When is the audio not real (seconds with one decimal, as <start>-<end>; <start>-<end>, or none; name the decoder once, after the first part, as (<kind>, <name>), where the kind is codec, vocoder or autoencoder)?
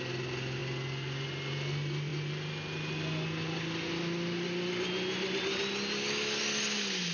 none